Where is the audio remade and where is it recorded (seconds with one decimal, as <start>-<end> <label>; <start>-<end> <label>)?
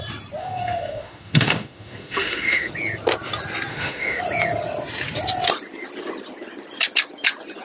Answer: 0.0-0.4 recorded; 0.4-2.7 remade; 2.7-3.7 recorded; 3.7-4.2 remade; 4.2-7.6 recorded